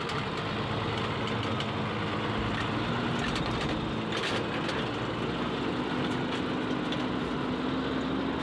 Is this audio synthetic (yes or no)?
no